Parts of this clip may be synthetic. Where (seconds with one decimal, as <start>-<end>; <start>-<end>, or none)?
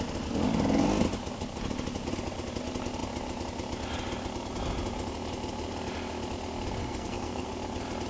6.8-7.5